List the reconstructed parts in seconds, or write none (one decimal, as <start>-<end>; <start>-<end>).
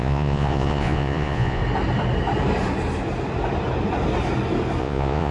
0.0-1.6; 4.8-5.3